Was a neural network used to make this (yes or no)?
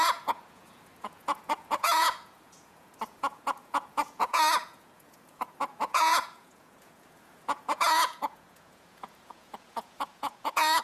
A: yes